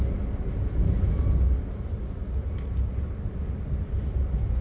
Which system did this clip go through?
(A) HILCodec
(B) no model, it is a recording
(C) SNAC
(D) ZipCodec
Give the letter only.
B